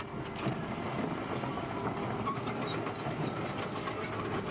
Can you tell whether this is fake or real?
real